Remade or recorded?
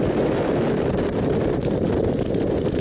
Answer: remade